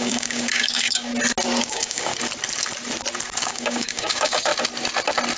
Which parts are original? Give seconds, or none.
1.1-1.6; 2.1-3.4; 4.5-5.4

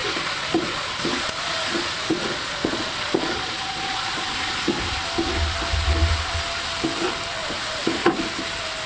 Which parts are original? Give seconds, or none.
5.0-7.4; 8.1-8.9

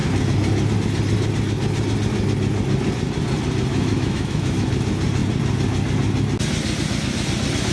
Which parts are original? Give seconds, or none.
0.0-3.7; 4.7-7.7

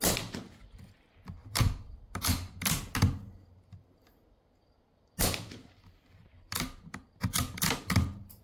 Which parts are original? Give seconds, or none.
0.0-8.4

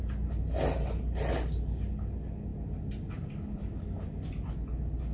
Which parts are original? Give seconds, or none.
0.0-2.5; 3.1-5.1